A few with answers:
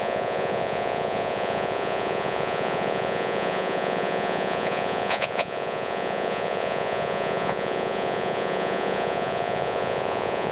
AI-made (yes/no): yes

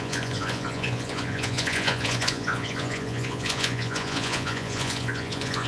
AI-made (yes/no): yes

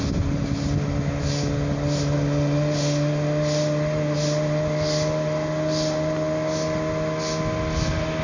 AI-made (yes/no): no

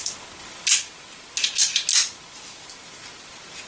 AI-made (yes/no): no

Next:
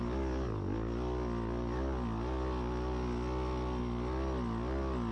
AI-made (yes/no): no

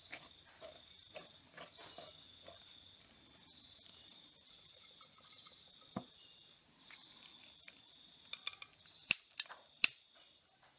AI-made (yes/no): no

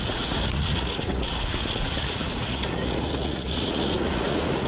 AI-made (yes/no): yes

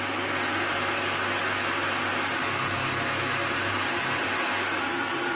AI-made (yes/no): no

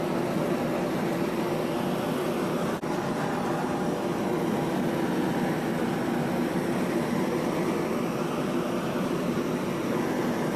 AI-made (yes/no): no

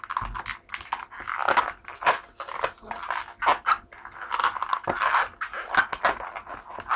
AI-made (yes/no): no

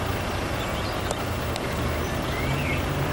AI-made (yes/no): no